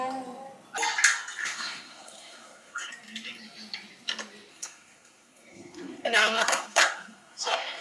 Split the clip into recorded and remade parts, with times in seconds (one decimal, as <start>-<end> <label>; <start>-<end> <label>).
0.0-1.4 recorded; 1.4-2.9 remade; 2.9-4.5 recorded; 4.5-7.8 remade